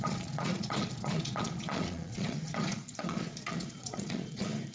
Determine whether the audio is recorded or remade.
remade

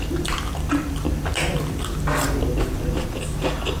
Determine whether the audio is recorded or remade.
remade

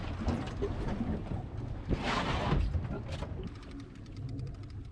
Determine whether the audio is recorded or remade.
recorded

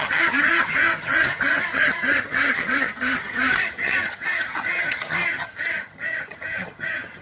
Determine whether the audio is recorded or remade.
remade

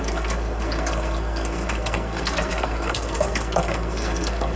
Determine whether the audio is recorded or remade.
remade